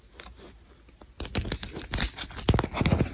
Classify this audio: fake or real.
real